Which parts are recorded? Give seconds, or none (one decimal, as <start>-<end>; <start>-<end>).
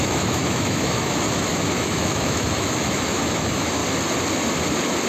3.8-5.1